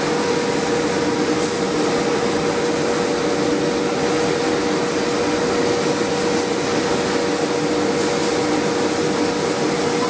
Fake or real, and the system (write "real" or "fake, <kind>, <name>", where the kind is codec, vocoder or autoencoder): real